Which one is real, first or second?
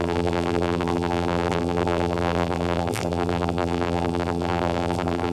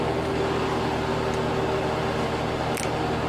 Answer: second